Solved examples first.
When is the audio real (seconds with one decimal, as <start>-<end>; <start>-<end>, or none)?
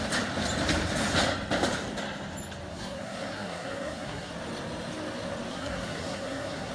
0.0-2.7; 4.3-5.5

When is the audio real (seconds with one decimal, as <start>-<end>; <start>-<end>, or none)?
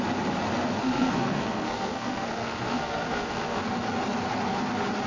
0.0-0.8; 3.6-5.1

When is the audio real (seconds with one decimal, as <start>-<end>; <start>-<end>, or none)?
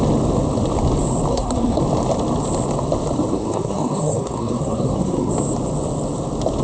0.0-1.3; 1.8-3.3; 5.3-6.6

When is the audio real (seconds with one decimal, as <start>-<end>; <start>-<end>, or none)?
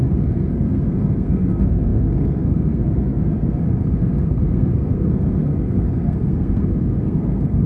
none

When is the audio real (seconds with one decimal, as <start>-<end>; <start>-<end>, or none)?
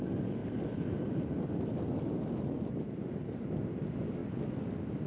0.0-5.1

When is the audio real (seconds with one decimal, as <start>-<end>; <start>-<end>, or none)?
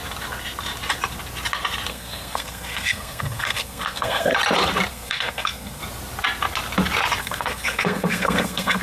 0.0-1.9; 4.3-4.9; 5.8-7.2